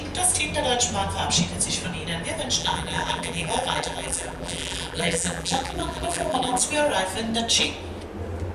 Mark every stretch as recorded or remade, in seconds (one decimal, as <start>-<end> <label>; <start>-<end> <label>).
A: 0.0-2.6 recorded; 2.6-6.6 remade; 6.6-8.5 recorded